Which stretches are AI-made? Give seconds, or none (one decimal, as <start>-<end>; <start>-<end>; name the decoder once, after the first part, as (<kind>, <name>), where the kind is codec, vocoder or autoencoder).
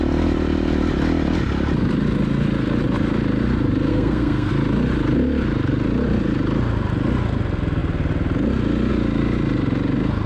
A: 3.9-4.5 (codec, SNAC)